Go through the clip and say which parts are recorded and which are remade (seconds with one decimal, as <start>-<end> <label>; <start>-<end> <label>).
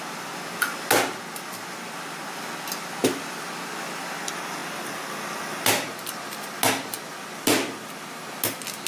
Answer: 0.0-8.9 recorded